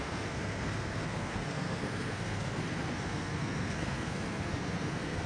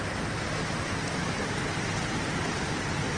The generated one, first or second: first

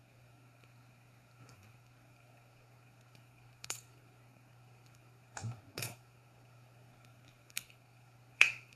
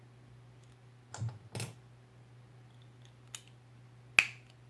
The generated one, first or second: first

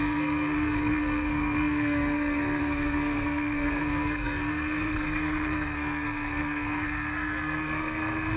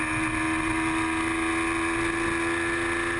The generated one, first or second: first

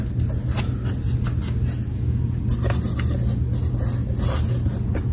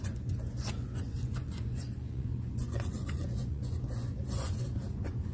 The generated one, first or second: second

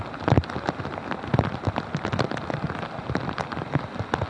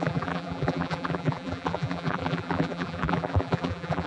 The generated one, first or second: second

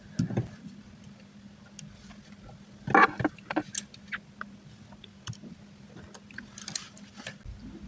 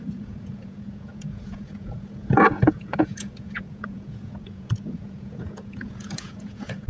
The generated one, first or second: second